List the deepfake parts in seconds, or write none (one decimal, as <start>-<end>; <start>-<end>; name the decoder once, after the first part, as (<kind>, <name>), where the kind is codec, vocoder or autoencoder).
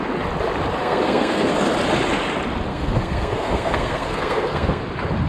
0.8-1.5 (codec, SNAC); 2.7-4.8